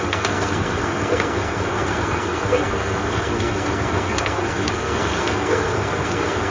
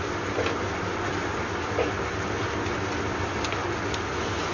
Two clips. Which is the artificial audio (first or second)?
first